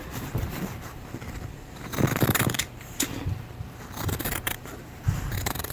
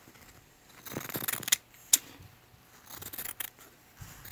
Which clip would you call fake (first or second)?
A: first